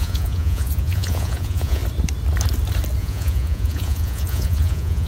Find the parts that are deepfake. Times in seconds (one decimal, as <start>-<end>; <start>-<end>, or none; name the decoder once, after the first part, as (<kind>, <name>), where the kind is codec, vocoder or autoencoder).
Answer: 0.0-1.8 (vocoder, Vocos); 3.0-5.1